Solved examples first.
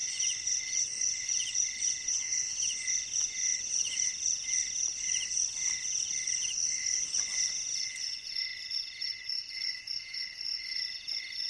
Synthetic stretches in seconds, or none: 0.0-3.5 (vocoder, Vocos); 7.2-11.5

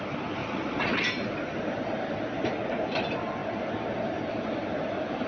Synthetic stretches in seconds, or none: 0.4-1.0 (vocoder, Vocos)

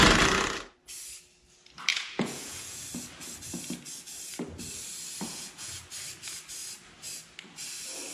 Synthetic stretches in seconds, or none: 1.9-2.8 (vocoder, Vocos); 5.3-5.8

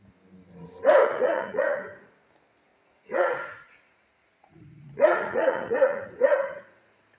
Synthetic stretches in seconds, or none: 1.0-2.1 (vocoder, Vocos); 2.7-7.2

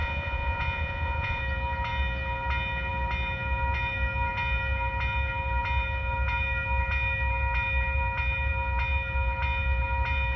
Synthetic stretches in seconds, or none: 0.0-1.4 (vocoder, Vocos)

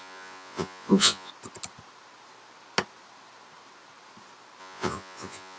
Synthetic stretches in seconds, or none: 0.0-1.3 (vocoder, Vocos); 4.6-5.6